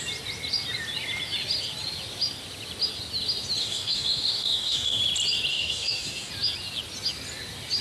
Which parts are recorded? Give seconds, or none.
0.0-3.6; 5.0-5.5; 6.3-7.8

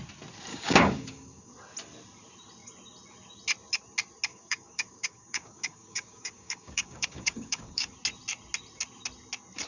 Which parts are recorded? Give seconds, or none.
0.0-0.5; 1.5-4.3; 7.9-9.7

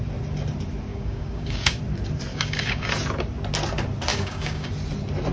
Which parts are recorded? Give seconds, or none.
0.0-0.9; 1.8-2.3; 2.9-4.1; 4.7-5.3

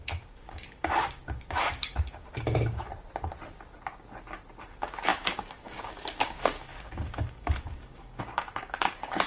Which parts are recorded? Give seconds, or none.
2.9-4.6

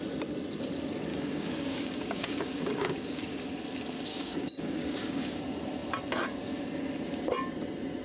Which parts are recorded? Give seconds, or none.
0.0-1.1; 3.4-4.1; 5.3-8.0

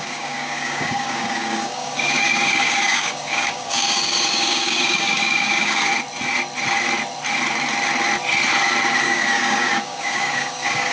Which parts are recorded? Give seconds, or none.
5.9-9.0

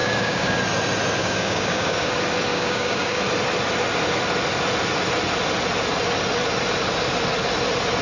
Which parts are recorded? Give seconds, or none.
0.6-1.2; 2.1-2.5; 3.2-8.0

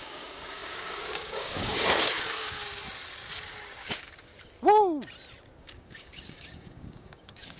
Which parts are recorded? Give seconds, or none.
2.6-3.8; 4.3-5.6